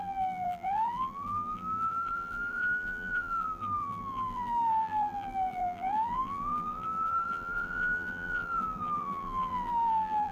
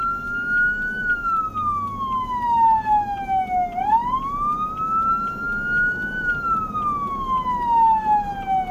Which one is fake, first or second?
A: first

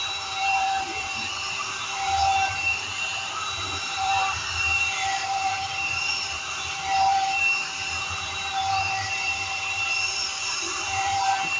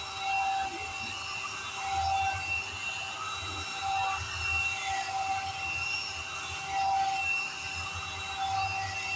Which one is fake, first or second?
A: first